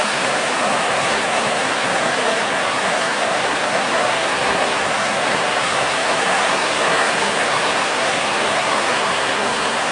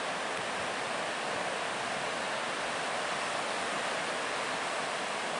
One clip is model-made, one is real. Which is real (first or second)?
second